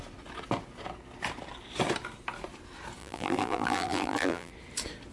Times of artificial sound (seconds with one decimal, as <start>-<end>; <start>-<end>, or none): 3.0-4.5